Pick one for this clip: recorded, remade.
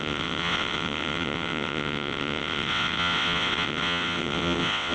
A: remade